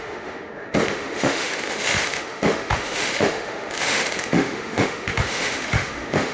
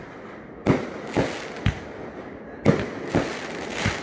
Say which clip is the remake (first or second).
first